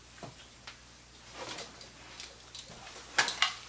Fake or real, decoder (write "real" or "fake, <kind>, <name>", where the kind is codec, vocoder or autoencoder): real